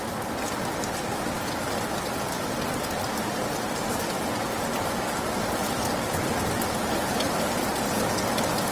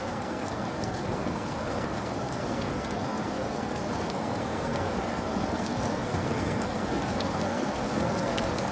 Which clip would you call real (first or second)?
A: first